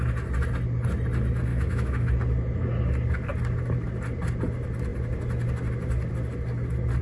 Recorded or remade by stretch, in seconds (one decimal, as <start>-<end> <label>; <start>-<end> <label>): 0.0-1.5 recorded; 1.5-2.1 remade; 2.1-7.0 recorded